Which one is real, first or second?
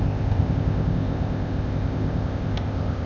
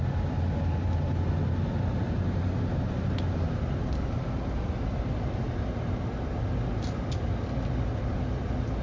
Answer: second